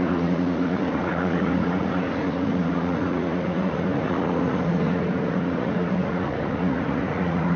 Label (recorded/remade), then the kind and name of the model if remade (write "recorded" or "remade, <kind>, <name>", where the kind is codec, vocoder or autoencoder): remade, vocoder, Vocos